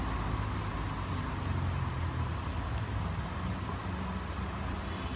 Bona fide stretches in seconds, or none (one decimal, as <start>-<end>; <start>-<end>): 0.0-5.2